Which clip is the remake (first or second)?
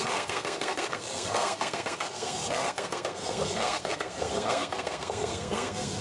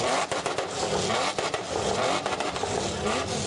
first